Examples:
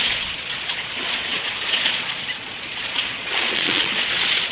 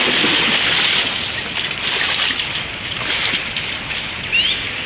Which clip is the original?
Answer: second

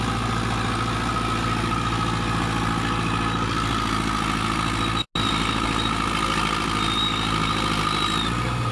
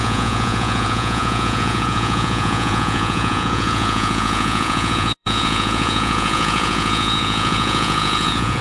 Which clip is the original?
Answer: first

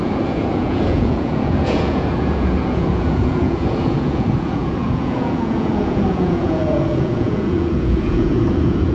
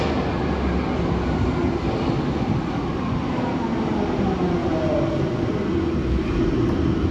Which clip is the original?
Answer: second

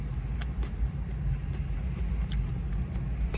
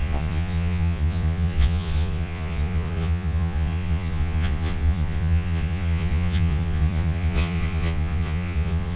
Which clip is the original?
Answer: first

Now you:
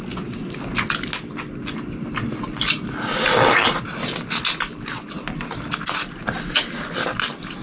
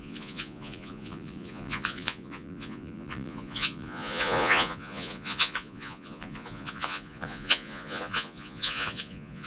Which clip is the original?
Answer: first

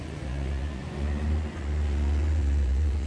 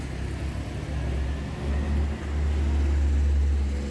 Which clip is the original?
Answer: second